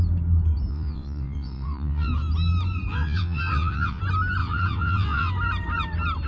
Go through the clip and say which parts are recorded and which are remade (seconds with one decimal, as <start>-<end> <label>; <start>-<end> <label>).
0.0-0.7 recorded; 0.7-2.1 remade; 2.1-2.9 recorded; 2.9-4.0 remade; 4.0-4.4 recorded; 4.4-5.3 remade; 5.3-6.3 recorded

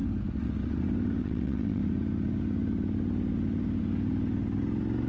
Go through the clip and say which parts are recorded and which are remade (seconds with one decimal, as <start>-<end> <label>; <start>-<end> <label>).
0.0-1.2 recorded; 1.2-1.8 remade; 1.8-5.1 recorded

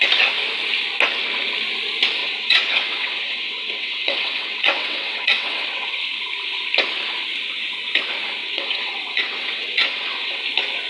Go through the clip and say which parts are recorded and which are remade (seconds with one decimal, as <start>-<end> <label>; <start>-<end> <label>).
0.0-2.2 recorded; 2.2-6.0 remade; 6.0-8.4 recorded; 8.4-10.4 remade; 10.4-10.9 recorded

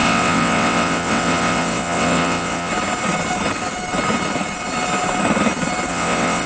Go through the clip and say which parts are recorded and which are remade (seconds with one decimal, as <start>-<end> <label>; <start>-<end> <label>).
0.0-2.7 remade; 2.7-5.9 recorded; 5.9-6.5 remade

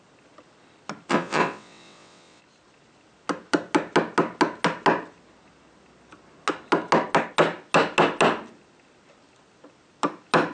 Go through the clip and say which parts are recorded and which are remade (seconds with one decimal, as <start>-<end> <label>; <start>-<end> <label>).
0.0-1.1 recorded; 1.1-2.4 remade; 2.4-10.5 recorded